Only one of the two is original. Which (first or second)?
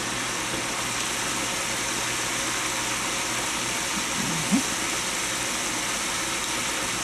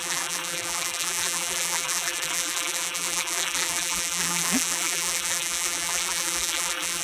first